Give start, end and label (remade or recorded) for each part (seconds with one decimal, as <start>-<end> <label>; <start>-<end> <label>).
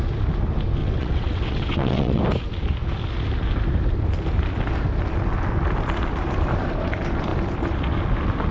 0.0-0.8 recorded; 0.8-2.2 remade; 2.2-8.5 recorded